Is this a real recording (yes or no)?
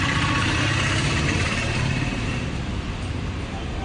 no